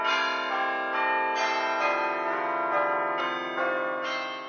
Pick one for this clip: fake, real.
real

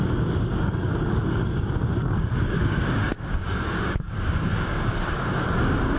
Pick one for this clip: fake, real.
fake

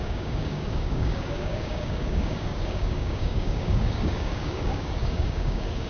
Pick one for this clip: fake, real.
fake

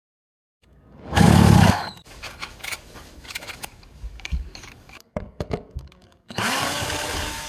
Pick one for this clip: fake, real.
fake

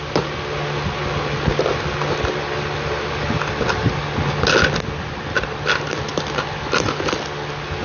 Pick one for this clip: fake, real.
real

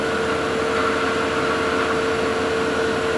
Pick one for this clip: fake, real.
real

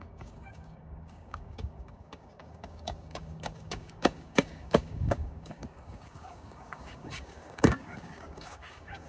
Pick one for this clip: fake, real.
fake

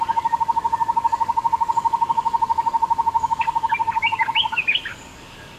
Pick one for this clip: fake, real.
fake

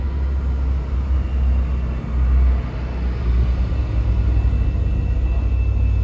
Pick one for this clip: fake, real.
real